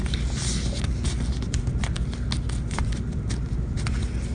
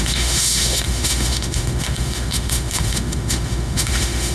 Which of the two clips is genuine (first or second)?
first